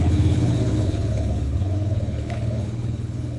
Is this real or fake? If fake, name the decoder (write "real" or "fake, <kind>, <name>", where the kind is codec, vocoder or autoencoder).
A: fake, codec, HILCodec